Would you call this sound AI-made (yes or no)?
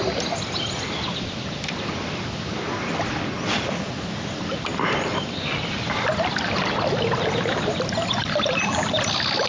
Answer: no